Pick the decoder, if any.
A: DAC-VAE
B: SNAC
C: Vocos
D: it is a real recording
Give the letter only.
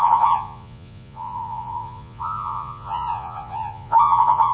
C